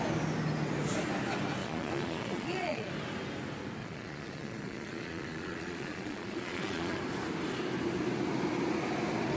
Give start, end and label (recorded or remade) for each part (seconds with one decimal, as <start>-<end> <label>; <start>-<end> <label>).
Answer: 0.0-1.6 recorded; 1.6-2.9 remade; 2.9-3.8 recorded; 3.8-7.0 remade; 7.0-9.4 recorded

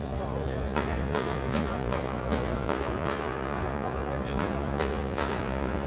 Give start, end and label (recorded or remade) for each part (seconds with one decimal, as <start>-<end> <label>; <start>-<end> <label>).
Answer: 0.0-5.9 remade